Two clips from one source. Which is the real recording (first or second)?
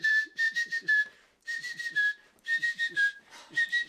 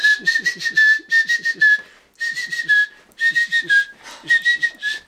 second